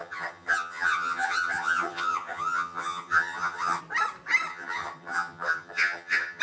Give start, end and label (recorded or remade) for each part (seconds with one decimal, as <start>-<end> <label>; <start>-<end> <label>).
0.0-3.8 remade; 3.8-4.5 recorded; 4.5-6.4 remade